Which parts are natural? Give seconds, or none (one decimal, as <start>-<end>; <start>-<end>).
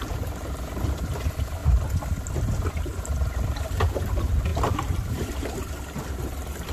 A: 1.6-2.7